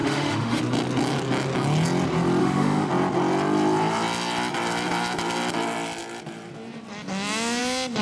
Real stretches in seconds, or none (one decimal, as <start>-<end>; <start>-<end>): 0.6-2.4; 2.9-8.0